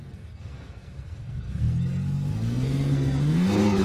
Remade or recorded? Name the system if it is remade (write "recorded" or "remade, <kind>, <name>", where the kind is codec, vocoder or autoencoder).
remade, codec, SNAC